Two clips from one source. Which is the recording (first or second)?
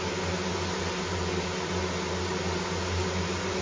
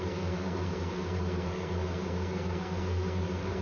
first